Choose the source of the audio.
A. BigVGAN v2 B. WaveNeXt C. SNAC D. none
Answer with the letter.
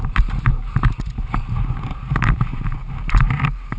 A